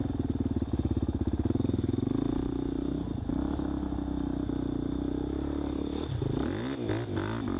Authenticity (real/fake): real